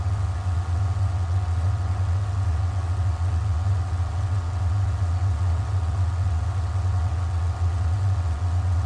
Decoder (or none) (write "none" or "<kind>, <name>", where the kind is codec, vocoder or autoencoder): vocoder, WaveNeXt